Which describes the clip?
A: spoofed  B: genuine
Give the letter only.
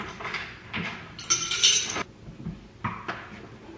B